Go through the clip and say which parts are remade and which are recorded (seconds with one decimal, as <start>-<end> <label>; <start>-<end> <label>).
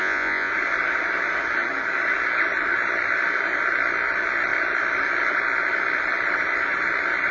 0.0-0.5 remade; 0.5-7.3 recorded